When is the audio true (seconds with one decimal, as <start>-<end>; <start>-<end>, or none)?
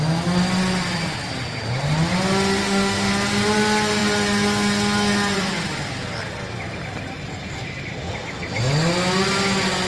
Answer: 0.0-2.6; 3.1-9.9